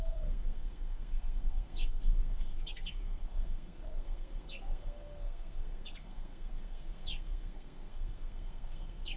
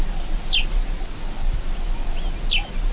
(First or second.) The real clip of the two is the second